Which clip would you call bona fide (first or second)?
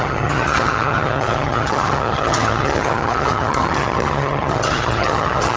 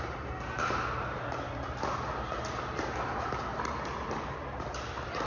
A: second